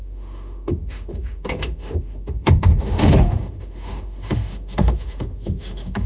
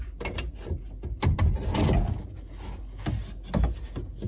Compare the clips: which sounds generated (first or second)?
first